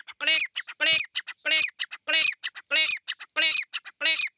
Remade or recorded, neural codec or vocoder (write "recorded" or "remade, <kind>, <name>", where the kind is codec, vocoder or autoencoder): recorded